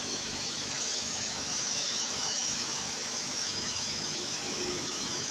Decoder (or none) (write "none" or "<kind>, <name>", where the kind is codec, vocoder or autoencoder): autoencoder, DAC-VAE